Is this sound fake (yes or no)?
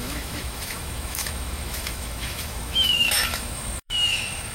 yes